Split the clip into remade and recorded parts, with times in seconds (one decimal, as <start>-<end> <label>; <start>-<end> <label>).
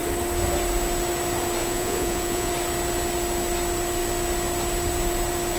0.0-1.6 recorded; 1.6-2.5 remade; 2.5-5.6 recorded